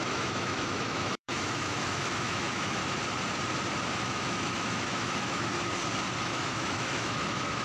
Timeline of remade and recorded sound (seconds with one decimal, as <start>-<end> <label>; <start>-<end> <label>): 0.0-2.8 remade; 2.8-4.0 recorded; 4.0-5.5 remade; 5.5-6.2 recorded; 6.2-7.6 remade

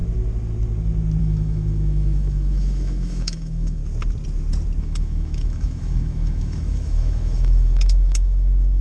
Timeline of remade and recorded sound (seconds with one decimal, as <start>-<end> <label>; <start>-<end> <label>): 0.0-1.2 recorded; 1.2-3.8 remade; 3.8-4.8 recorded; 4.8-8.8 remade

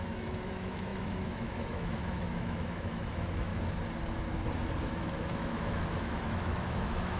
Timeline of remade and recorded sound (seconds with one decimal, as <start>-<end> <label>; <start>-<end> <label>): 0.0-3.5 remade; 3.5-4.9 recorded; 4.9-7.2 remade

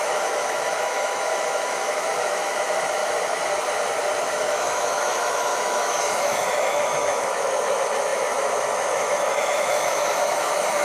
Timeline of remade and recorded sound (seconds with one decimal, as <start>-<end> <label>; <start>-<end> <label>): 0.0-3.0 remade; 3.0-4.2 recorded; 4.2-10.8 remade

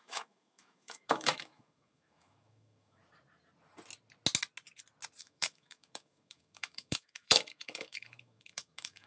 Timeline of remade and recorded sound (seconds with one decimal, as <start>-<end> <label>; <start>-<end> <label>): 0.0-3.0 remade; 3.0-5.2 recorded; 5.2-9.1 remade

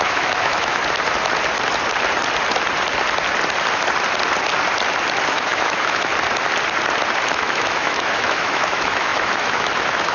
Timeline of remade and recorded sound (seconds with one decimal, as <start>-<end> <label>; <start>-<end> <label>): 0.0-0.8 remade; 0.8-5.3 recorded; 5.3-6.1 remade; 6.1-7.3 recorded; 7.3-10.1 remade

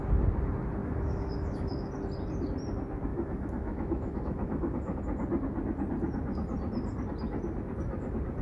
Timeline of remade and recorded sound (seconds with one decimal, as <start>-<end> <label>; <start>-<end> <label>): 0.0-0.8 recorded; 0.8-1.9 remade; 1.9-3.1 recorded; 3.1-5.0 remade; 5.0-8.4 recorded

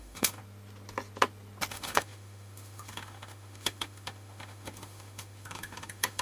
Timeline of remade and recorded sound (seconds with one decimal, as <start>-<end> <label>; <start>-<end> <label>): 0.0-0.4 remade; 0.4-1.7 recorded; 1.7-6.2 remade